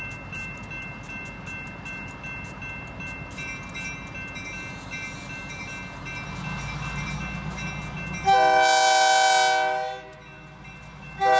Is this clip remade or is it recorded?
recorded